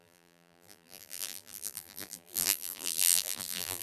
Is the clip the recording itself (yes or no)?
no